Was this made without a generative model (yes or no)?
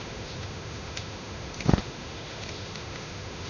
no